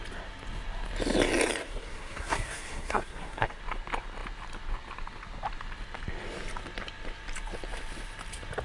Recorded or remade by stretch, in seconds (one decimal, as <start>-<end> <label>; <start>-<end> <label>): 0.0-1.6 recorded; 1.6-3.6 remade; 3.6-8.6 recorded